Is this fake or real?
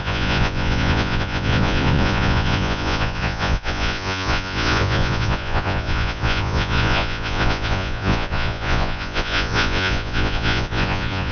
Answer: fake